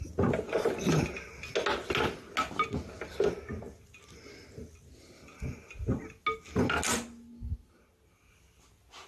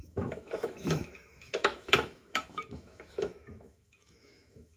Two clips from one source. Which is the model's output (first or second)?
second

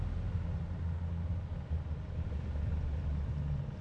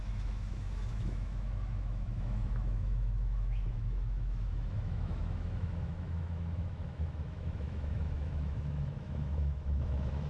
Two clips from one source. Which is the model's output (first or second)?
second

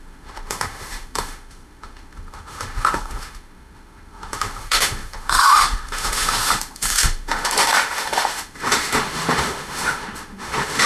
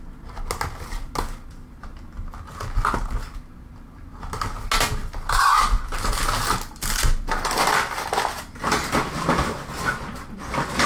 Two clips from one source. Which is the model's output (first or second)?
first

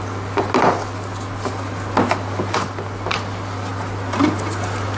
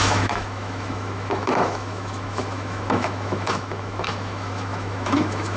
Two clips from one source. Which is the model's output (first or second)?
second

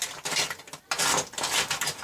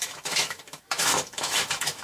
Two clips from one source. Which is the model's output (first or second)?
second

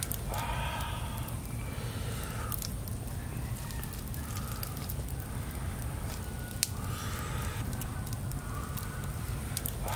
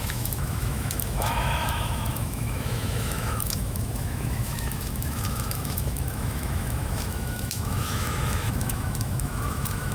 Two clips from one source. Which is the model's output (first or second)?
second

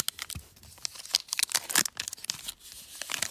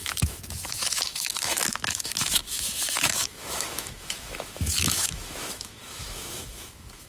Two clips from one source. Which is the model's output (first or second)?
second